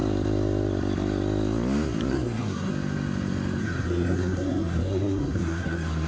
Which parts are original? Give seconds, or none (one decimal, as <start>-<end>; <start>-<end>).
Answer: 0.0-2.1; 2.7-3.6